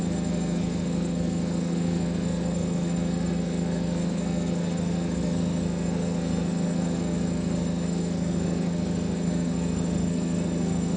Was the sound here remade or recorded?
remade